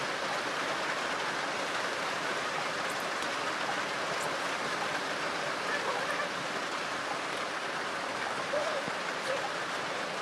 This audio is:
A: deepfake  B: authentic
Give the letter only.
B